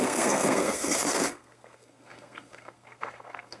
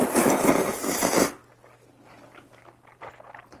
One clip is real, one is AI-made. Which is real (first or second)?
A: second